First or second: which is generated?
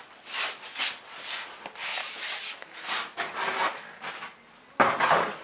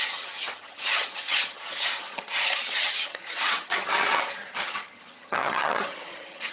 second